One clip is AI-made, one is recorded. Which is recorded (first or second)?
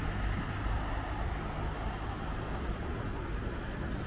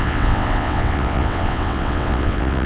first